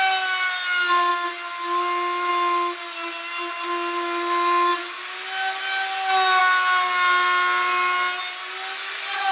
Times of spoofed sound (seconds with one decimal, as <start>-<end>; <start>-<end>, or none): none